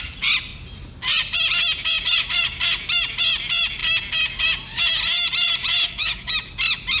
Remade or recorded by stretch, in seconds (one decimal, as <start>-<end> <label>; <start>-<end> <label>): 0.0-5.8 recorded; 5.8-6.3 remade; 6.3-7.0 recorded